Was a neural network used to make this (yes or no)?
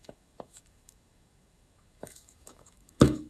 yes